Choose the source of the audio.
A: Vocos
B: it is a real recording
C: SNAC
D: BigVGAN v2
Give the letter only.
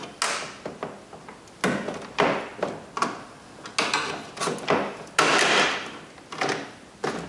B